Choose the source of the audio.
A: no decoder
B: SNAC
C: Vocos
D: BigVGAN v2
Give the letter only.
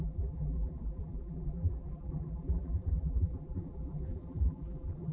D